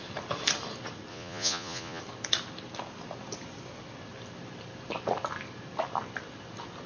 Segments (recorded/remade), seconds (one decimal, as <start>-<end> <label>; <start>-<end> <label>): 0.0-1.1 recorded; 1.1-2.0 remade; 2.0-6.9 recorded